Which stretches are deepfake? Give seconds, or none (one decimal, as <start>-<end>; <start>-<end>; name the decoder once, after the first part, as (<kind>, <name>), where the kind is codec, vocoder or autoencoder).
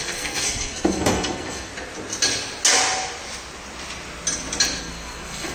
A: 0.0-1.7 (codec, SNAC); 4.8-5.5